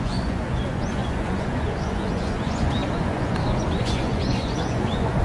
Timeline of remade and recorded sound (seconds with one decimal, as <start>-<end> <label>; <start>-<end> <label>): 0.0-5.2 remade